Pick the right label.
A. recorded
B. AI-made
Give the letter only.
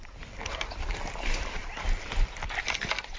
A